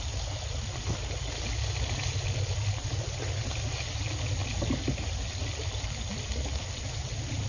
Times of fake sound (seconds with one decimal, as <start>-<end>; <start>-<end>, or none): none